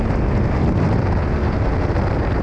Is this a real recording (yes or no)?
yes